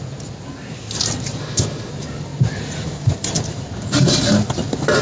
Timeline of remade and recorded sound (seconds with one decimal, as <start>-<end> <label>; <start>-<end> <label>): 0.0-1.4 recorded; 1.4-1.9 remade; 1.9-5.0 recorded